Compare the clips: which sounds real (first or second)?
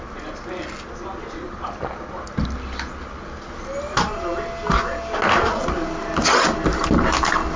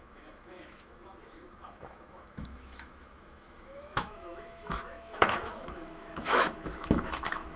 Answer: first